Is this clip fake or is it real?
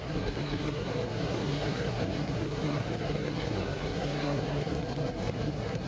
fake